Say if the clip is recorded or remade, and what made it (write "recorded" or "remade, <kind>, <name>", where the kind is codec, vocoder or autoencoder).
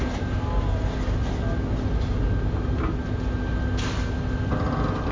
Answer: recorded